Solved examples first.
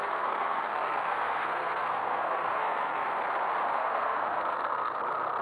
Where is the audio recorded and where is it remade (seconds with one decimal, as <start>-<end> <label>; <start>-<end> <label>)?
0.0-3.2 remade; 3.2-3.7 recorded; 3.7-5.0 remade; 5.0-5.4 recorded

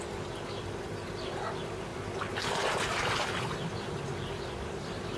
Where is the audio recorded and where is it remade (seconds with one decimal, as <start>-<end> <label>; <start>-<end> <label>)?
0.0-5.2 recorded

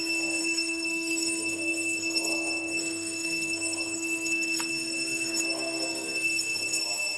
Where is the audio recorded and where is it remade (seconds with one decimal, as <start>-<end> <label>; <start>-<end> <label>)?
0.0-0.4 recorded; 0.4-4.7 remade; 4.7-5.3 recorded; 5.3-6.8 remade; 6.8-7.2 recorded